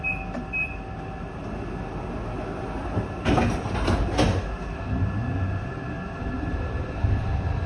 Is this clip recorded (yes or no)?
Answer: yes